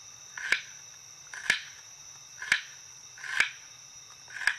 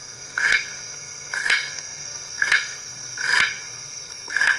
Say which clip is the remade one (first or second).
second